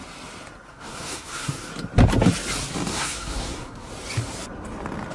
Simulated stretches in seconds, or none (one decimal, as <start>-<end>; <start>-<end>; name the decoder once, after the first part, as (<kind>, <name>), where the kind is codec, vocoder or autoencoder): 0.7-1.7 (codec, SNAC); 2.9-3.9